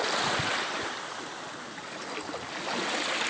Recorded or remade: recorded